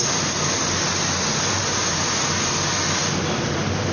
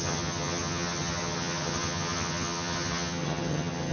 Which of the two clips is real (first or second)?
first